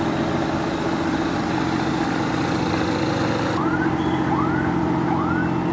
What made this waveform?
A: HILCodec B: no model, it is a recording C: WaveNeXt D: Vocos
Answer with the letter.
B